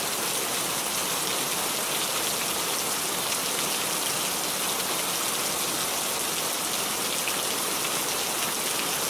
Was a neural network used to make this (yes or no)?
no